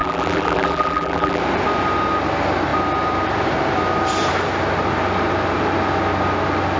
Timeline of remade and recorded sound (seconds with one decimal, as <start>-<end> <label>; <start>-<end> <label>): 0.0-1.4 remade; 1.4-6.8 recorded